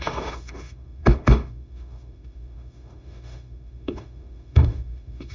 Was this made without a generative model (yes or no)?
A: no